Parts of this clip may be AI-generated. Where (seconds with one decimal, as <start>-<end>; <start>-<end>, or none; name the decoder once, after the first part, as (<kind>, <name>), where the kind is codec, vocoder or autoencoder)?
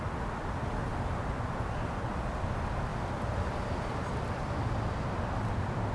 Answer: none